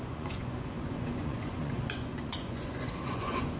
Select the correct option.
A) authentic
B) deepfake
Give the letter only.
B